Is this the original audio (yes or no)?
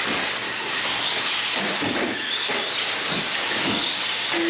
yes